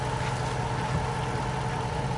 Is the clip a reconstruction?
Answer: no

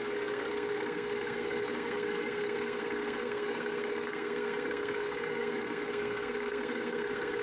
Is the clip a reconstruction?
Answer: yes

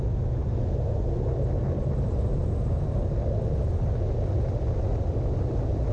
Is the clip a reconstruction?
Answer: no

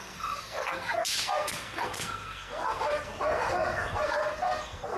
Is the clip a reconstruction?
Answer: yes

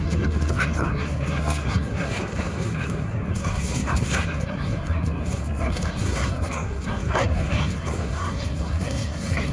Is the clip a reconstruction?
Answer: yes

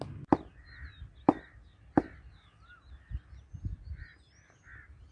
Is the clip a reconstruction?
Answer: no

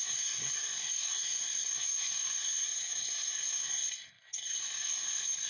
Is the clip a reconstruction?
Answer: yes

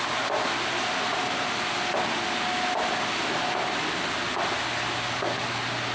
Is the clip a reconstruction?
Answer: no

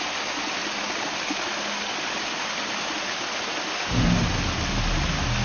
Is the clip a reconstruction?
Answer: no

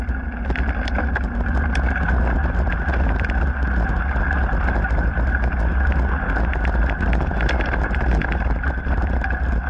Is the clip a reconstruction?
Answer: no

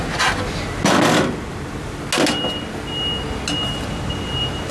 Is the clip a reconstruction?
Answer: no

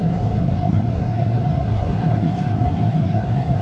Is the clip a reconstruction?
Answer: yes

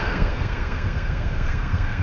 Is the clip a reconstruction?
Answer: yes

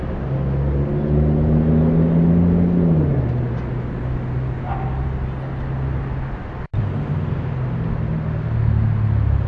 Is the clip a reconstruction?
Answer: no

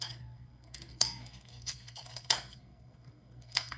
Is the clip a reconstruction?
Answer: yes